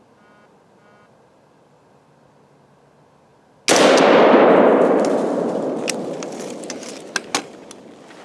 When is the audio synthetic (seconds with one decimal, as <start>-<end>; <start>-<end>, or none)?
none